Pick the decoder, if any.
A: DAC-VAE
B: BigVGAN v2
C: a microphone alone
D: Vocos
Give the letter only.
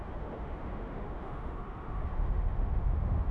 A